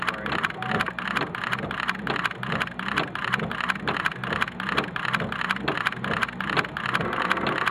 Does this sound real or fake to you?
real